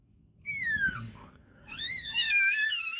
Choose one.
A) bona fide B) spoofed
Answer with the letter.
B